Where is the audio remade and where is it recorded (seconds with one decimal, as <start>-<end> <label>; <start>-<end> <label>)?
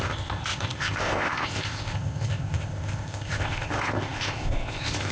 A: 0.0-5.1 remade